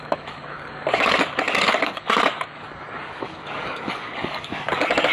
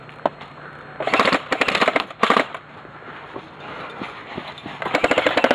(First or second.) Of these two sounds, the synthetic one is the first